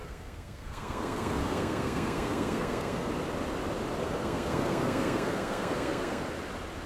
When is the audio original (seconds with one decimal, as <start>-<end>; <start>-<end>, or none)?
3.1-4.0; 6.2-6.9